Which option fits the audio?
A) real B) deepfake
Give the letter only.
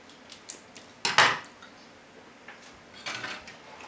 A